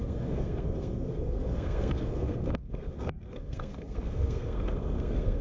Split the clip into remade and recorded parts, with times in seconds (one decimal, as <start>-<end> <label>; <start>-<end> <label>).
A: 0.0-5.4 remade